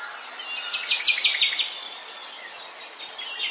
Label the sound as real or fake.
real